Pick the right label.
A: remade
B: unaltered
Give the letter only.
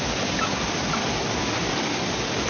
B